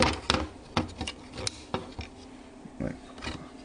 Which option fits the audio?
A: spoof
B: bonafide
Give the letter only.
B